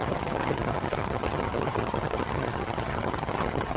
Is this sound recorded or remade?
remade